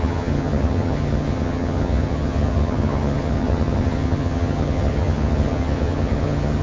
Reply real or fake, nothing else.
fake